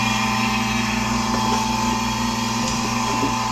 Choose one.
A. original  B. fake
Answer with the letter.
A